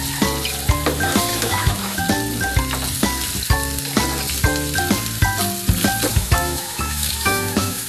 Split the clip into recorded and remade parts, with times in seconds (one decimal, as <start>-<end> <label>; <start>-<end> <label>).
0.0-1.3 recorded; 1.3-2.0 remade; 2.0-6.1 recorded; 6.1-7.9 remade